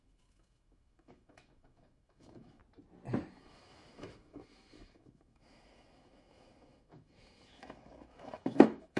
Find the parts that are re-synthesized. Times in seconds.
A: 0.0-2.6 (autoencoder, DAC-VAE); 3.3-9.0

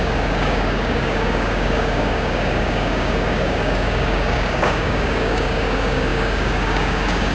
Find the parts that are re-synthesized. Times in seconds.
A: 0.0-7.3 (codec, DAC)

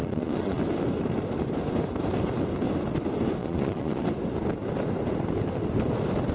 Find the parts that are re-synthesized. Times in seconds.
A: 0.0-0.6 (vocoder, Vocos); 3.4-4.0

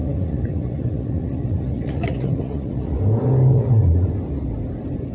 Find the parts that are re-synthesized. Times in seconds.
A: 0.0-3.0 (vocoder, Vocos); 3.5-4.1